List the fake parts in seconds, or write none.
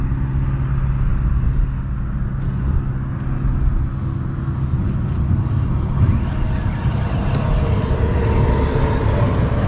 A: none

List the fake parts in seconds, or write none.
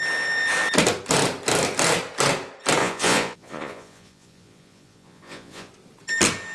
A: 2.8-5.7 (vocoder, Vocos)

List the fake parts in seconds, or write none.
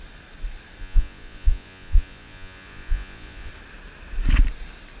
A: 0.8-3.5 (vocoder, Vocos)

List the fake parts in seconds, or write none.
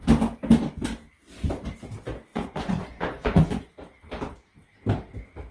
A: 2.3-3.7 (vocoder, Vocos)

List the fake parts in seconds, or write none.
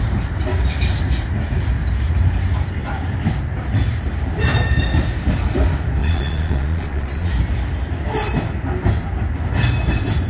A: 6.0-7.3 (vocoder, Vocos)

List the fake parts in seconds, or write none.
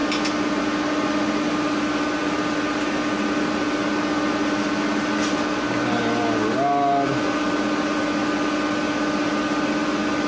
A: none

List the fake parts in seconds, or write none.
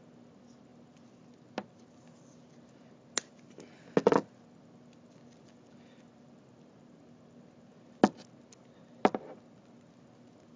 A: none